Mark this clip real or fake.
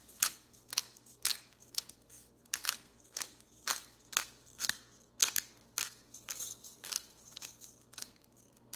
fake